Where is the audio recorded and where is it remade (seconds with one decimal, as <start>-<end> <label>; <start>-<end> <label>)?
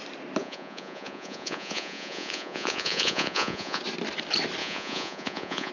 0.0-0.4 recorded; 0.4-3.8 remade; 3.8-4.6 recorded; 4.6-5.7 remade